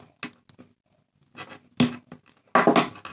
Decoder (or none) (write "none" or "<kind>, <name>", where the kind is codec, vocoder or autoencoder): none